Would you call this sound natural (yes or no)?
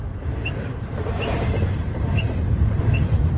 no